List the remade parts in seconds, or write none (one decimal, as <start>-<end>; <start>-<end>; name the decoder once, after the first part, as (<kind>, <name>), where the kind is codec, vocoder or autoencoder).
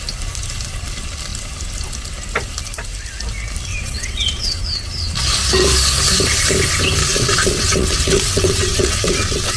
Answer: 3.7-4.6 (vocoder, WaveNeXt); 7.0-9.6